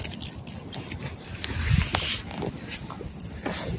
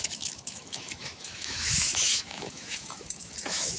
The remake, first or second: second